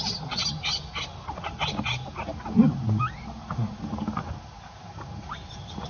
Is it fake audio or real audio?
real